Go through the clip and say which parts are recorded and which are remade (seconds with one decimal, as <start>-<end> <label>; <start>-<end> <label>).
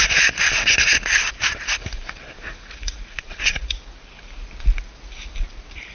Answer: 0.0-2.6 recorded; 2.6-3.8 remade; 3.8-5.9 recorded